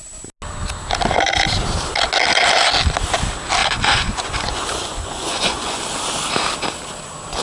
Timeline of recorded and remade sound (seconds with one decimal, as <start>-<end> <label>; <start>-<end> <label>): 0.0-3.6 recorded; 3.6-5.8 remade; 5.8-7.4 recorded